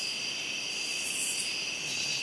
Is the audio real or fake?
real